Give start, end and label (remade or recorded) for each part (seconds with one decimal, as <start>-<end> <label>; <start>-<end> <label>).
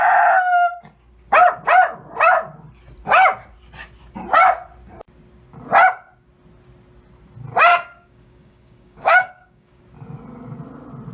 0.0-7.7 recorded; 7.7-9.8 remade; 9.8-11.1 recorded